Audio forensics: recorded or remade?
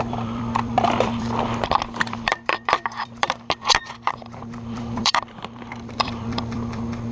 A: remade